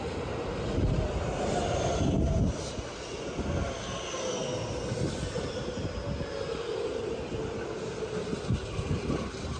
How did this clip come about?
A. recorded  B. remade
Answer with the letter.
A